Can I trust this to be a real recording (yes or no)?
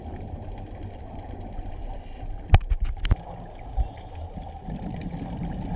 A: yes